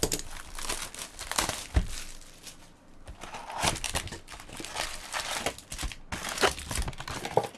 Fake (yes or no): no